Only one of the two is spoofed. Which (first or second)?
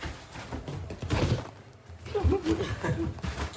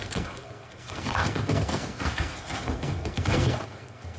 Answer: second